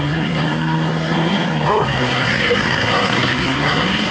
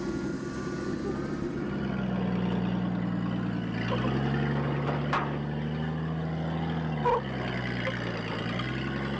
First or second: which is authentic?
second